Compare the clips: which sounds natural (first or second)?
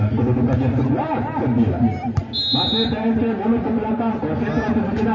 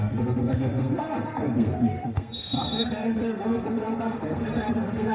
first